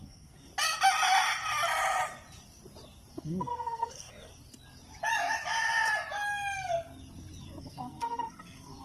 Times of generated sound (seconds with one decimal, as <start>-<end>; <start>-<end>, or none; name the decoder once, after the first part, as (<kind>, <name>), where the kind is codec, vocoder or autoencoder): 0.0-0.5 (codec, SNAC); 3.1-4.3; 7.6-8.8